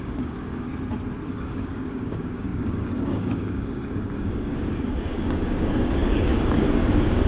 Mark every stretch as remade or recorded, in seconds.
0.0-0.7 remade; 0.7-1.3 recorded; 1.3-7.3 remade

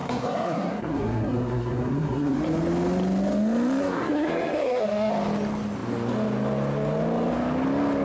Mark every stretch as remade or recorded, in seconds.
0.0-2.4 remade; 2.4-3.8 recorded; 3.8-5.1 remade; 5.1-8.0 recorded

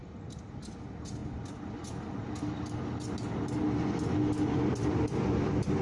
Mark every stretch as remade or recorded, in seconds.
0.0-5.8 recorded

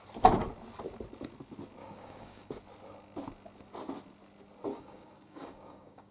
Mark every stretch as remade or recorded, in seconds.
0.0-1.8 recorded; 1.8-2.5 remade; 2.5-4.7 recorded; 4.7-6.1 remade

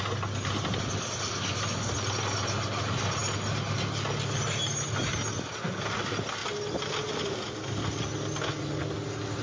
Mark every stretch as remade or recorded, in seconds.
0.0-9.4 recorded

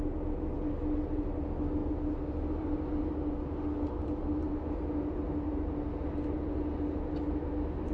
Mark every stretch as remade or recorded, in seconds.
0.0-7.9 recorded

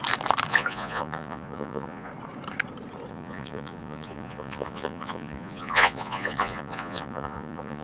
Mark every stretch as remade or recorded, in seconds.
0.0-0.5 recorded; 0.5-2.1 remade; 2.1-3.1 recorded; 3.1-7.8 remade